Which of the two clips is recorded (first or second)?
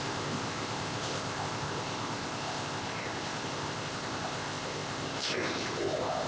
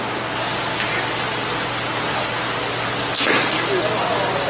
second